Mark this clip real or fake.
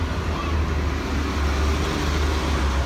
real